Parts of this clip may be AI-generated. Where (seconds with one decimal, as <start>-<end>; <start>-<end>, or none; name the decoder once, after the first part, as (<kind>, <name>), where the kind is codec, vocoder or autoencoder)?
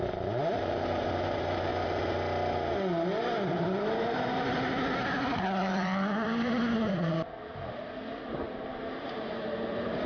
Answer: 0.0-1.7 (vocoder, BigVGAN v2); 3.2-7.6; 8.3-10.1